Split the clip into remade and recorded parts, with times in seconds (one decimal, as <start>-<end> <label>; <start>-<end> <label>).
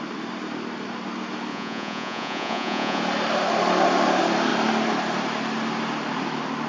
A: 0.0-1.5 recorded; 1.5-3.0 remade; 3.0-6.7 recorded